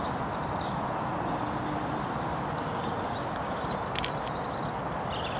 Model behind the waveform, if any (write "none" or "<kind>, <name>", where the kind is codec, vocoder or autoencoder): none